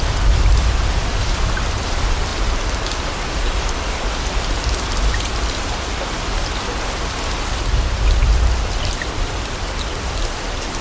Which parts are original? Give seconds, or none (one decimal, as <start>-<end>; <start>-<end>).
0.0-10.8